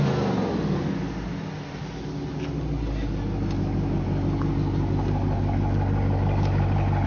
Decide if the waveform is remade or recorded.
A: recorded